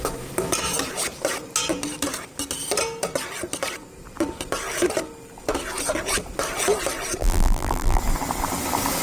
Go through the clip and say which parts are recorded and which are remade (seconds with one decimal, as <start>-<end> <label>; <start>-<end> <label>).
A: 0.0-7.2 recorded; 7.2-8.0 remade; 8.0-9.0 recorded

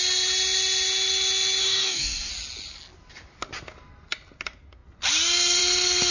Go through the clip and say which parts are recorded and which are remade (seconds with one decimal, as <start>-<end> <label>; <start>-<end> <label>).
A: 0.0-1.6 recorded; 1.6-2.3 remade; 2.3-6.1 recorded

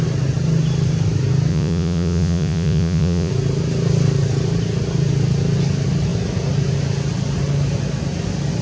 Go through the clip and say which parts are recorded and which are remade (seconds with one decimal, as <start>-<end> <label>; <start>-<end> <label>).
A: 0.0-1.5 recorded; 1.5-3.3 remade; 3.3-8.6 recorded

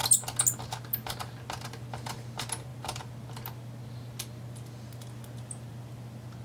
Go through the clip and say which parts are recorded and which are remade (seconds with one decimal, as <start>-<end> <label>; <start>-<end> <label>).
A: 0.0-6.4 recorded

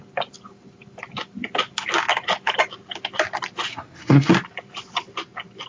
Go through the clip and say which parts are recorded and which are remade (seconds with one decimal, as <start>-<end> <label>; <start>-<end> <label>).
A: 0.0-3.7 recorded; 3.7-4.3 remade; 4.3-5.7 recorded

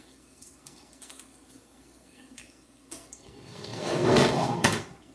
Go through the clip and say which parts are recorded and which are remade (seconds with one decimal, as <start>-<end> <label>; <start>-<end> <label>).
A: 0.0-5.1 remade